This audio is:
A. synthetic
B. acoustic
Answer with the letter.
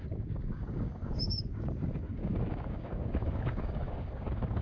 A